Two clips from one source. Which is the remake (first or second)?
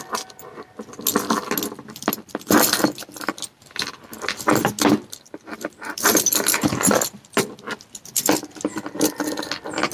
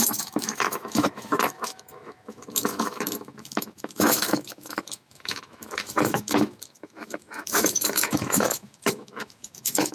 second